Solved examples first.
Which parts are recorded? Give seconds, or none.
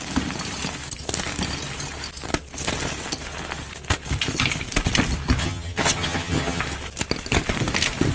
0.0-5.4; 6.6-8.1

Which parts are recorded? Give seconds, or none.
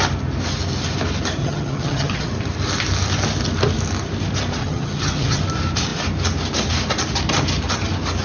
0.0-1.4; 2.3-4.6; 5.4-8.2